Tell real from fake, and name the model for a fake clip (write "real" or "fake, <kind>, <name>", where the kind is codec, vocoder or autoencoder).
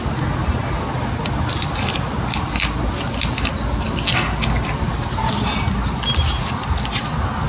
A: real